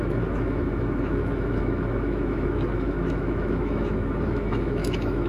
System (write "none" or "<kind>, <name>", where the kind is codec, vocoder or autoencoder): autoencoder, DAC-VAE